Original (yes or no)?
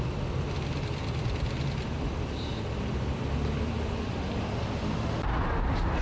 yes